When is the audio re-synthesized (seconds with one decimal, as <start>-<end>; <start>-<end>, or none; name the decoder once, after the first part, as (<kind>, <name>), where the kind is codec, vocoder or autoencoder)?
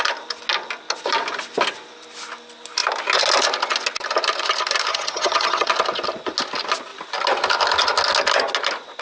4.9-5.7 (vocoder, HiFi-GAN)